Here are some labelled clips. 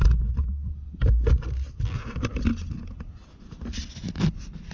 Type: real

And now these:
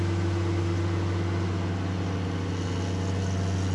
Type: real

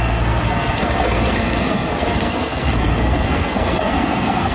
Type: fake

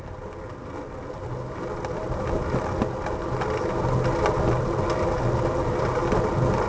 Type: real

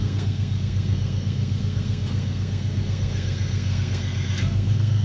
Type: fake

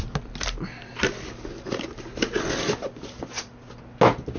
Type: real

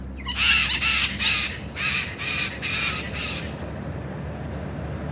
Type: real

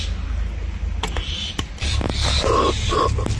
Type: real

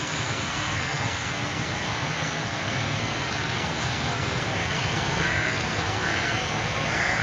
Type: fake